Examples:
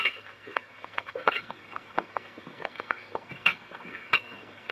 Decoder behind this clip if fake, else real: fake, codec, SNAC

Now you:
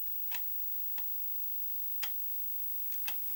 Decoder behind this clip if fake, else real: real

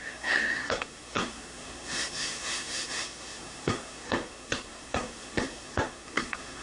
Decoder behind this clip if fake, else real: fake, codec, SNAC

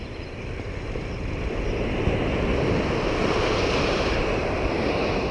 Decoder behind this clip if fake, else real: real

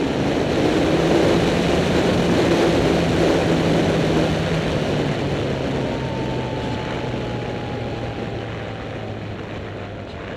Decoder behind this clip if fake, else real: real